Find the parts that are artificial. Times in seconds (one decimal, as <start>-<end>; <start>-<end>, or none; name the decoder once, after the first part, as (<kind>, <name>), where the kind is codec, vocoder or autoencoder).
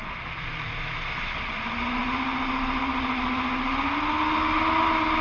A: none